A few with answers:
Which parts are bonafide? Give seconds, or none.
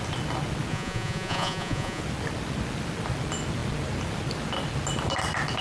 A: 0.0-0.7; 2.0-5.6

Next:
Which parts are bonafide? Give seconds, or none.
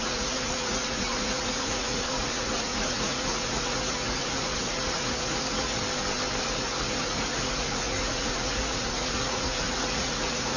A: 5.8-6.4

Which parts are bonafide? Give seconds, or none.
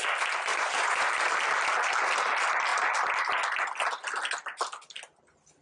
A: 0.0-0.5; 1.1-5.6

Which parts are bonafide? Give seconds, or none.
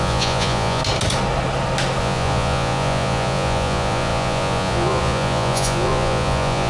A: 0.8-2.0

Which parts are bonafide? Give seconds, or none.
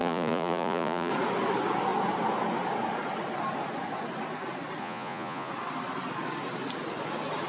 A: 1.1-4.8; 5.5-7.5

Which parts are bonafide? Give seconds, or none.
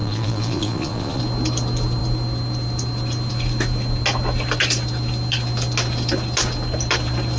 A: 1.2-7.4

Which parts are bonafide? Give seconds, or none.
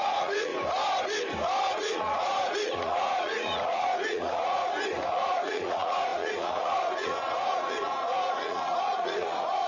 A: 0.5-1.6; 4.6-5.1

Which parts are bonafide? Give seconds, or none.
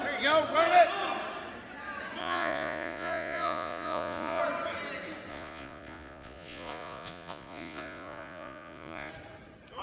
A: 0.0-2.2; 4.4-5.3; 9.1-9.8